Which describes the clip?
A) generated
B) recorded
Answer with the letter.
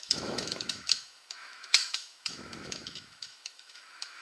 A